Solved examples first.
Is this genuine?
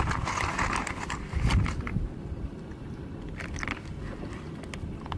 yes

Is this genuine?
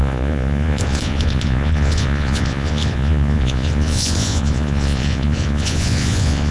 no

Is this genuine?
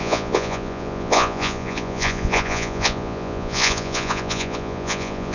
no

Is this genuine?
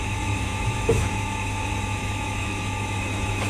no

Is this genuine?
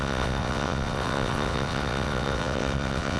no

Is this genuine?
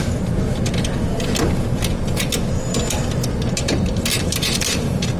yes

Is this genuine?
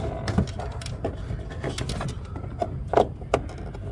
yes